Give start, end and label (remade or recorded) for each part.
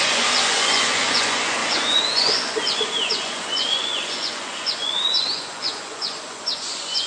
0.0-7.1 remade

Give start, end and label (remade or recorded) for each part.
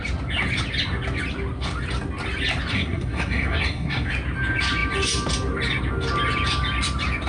0.0-2.7 recorded; 2.7-4.1 remade; 4.1-7.3 recorded